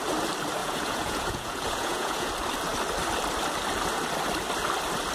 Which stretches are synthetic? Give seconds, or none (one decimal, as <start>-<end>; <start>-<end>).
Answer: 0.6-2.3